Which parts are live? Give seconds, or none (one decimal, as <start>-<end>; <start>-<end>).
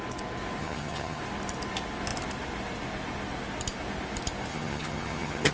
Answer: 0.0-0.6; 1.2-4.5